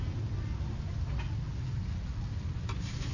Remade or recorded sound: recorded